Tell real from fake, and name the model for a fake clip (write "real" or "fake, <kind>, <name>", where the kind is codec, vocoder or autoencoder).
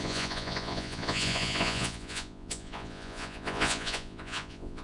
fake, vocoder, Vocos